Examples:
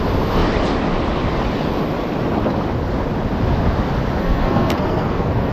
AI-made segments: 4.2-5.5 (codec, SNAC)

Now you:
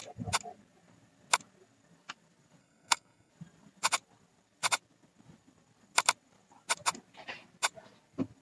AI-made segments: 2.6-3.3 (codec, SNAC)

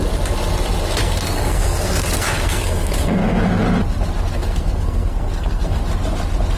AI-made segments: 1.0-3.4 (codec, SNAC); 4.3-5.8

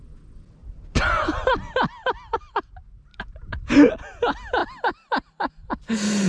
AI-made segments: 0.6-2.6 (vocoder, BigVGAN v2); 3.1-3.9; 4.6-5.5

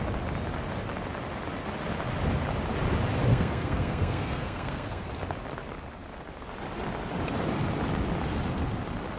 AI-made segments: 3.3-5.1 (codec, SNAC)